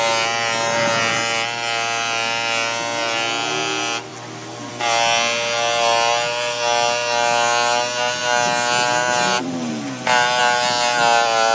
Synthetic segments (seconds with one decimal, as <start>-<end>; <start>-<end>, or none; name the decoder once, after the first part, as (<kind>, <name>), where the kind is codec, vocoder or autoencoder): none